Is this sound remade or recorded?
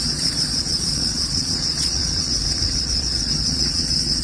remade